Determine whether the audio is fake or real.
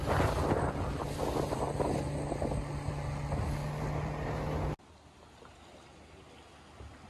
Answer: real